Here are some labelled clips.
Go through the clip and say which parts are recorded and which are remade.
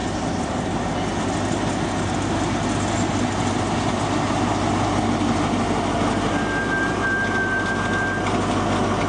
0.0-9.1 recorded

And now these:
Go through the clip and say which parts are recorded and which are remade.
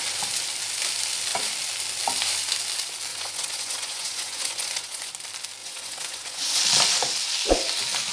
0.0-3.1 recorded; 3.1-5.1 remade; 5.1-5.6 recorded; 5.6-6.6 remade; 6.6-8.1 recorded